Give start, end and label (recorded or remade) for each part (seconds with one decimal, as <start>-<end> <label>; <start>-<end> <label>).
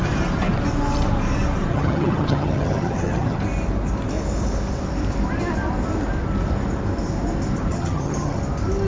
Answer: 0.0-1.7 recorded; 1.7-3.4 remade; 3.4-7.7 recorded; 7.7-8.4 remade; 8.4-8.9 recorded